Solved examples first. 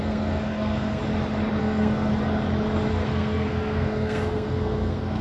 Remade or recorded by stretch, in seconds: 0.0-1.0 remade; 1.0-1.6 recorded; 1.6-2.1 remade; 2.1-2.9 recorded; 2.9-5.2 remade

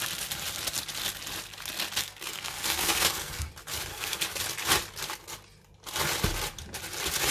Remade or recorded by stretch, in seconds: 0.0-2.0 recorded; 2.0-3.5 remade; 3.5-3.9 recorded; 3.9-4.4 remade; 4.4-7.3 recorded

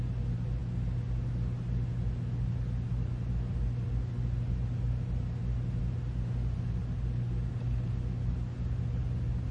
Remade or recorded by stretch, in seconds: 0.0-9.5 recorded

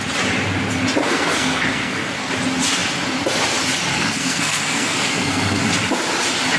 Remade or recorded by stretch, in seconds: 0.0-1.0 recorded; 1.0-2.3 remade; 2.3-3.9 recorded; 3.9-5.6 remade; 5.6-6.6 recorded

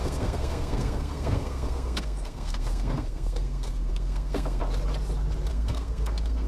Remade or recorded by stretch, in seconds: 0.0-4.6 remade; 4.6-5.5 recorded; 5.5-6.5 remade

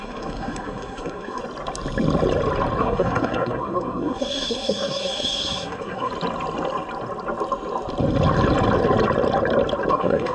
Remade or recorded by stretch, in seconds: 0.0-1.4 remade; 1.4-2.8 recorded; 2.8-6.1 remade; 6.1-9.9 recorded; 9.9-10.3 remade

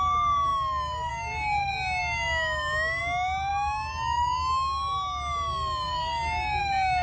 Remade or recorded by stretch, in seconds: 0.0-7.0 recorded